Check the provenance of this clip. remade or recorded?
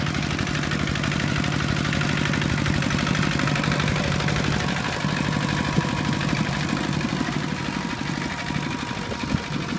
recorded